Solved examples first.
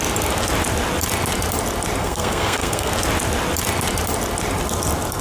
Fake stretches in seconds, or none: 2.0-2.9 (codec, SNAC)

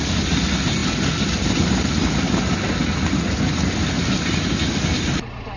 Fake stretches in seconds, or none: none

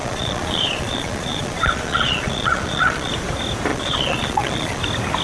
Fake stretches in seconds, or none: 0.0-3.1 (vocoder, Vocos); 3.7-4.8